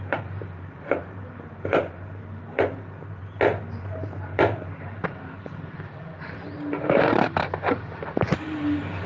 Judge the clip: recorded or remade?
remade